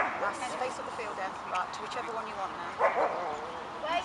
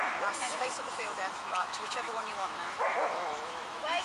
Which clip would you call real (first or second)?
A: first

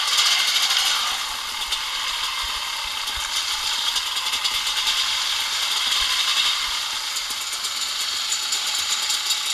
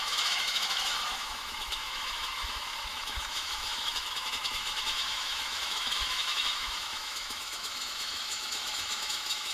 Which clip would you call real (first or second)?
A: first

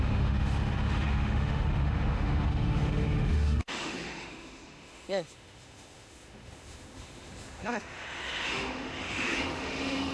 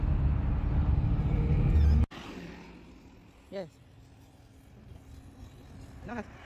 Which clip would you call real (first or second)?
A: second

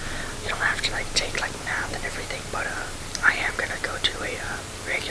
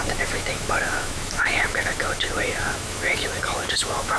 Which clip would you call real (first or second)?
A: first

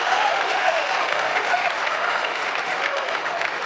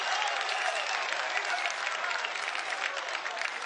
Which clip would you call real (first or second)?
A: second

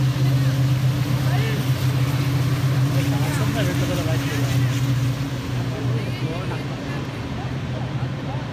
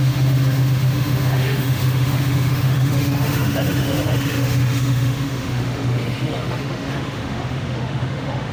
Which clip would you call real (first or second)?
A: first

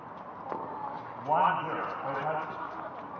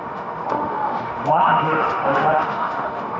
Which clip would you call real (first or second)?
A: first